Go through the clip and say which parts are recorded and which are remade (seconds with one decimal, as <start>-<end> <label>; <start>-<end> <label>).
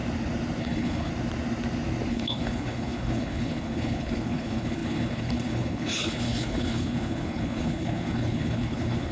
0.0-0.6 recorded; 0.6-1.1 remade; 1.1-2.1 recorded; 2.1-9.1 remade